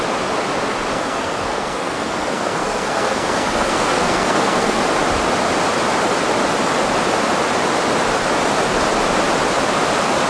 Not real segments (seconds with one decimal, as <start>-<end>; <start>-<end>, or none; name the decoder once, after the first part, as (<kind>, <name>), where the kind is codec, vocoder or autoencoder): 0.9-4.8 (codec, SNAC)